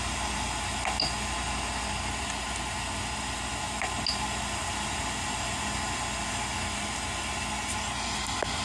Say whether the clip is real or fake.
real